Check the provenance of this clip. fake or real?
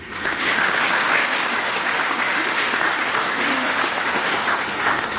fake